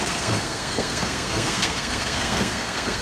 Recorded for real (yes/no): no